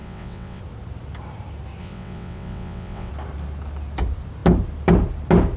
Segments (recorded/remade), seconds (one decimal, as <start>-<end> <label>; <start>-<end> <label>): 0.0-0.6 remade; 0.6-1.8 recorded; 1.8-3.1 remade; 3.1-5.6 recorded